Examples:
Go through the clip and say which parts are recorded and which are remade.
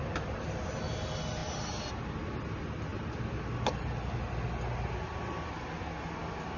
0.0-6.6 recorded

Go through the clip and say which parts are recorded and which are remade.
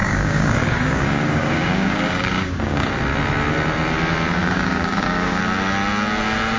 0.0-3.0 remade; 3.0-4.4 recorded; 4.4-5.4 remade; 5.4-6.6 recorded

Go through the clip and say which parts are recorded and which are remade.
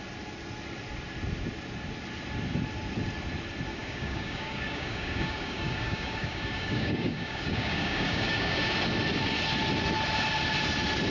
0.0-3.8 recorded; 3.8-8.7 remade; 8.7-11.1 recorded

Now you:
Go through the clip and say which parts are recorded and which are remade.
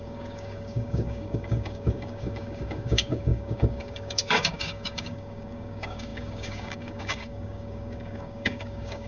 0.0-9.1 remade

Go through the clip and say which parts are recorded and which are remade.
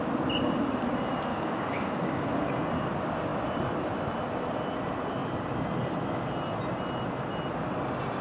0.0-1.3 recorded; 1.3-2.3 remade; 2.3-8.2 recorded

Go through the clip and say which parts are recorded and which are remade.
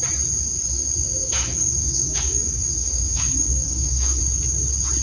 0.0-1.2 recorded; 1.2-4.2 remade; 4.2-5.0 recorded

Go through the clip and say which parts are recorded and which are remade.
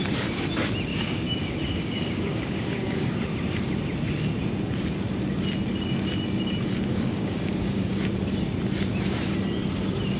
0.0-0.9 recorded; 0.9-3.1 remade; 3.1-6.9 recorded; 6.9-8.0 remade; 8.0-10.2 recorded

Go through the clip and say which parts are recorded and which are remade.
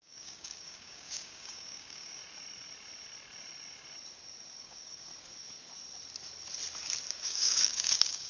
0.0-2.2 remade; 2.2-4.6 recorded; 4.6-5.1 remade; 5.1-7.1 recorded; 7.1-8.3 remade